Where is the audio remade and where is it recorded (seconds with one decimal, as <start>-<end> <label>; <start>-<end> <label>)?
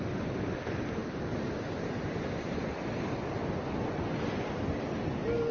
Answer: 0.0-5.5 recorded